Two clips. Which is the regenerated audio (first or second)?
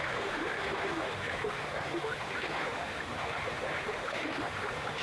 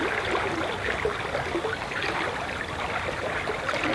first